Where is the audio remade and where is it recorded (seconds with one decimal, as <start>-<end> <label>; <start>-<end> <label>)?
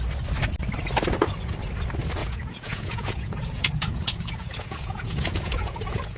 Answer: 0.0-2.2 recorded; 2.2-6.2 remade